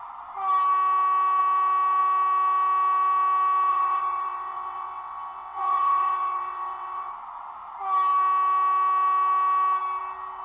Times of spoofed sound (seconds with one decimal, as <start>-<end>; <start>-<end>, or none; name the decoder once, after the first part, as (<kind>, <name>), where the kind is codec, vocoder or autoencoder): 3.7-7.1 (vocoder, WaveNeXt)